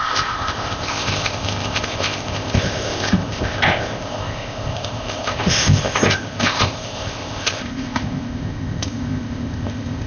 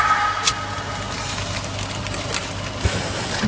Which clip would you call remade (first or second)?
first